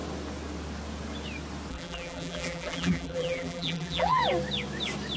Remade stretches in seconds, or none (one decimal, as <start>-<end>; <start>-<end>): 1.7-4.2